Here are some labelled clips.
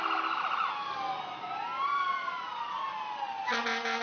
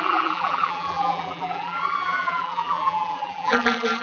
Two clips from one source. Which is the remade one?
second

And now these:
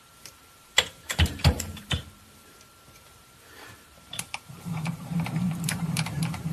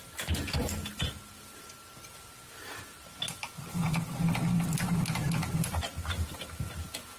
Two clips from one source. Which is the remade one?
first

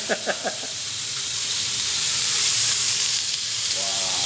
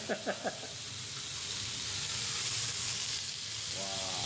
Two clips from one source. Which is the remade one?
first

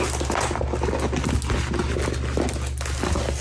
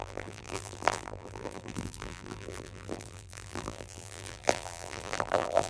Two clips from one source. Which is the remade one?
second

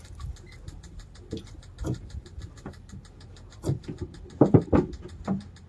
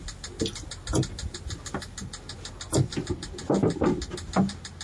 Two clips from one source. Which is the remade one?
first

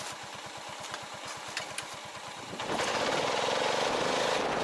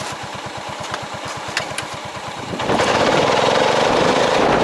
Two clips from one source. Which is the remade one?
second